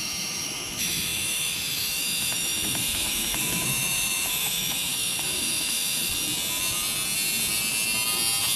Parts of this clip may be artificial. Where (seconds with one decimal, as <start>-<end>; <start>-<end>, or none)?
0.0-6.1